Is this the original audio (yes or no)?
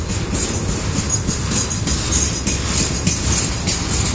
yes